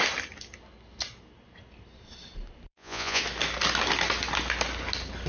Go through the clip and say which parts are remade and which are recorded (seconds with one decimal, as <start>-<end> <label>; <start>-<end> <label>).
0.0-2.7 recorded; 2.7-3.2 remade; 3.2-5.3 recorded